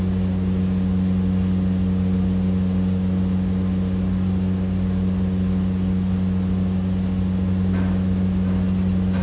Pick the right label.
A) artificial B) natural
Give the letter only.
B